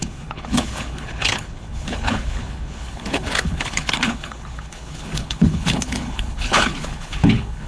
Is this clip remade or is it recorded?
remade